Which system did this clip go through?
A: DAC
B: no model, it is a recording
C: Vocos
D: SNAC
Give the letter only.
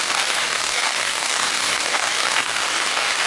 A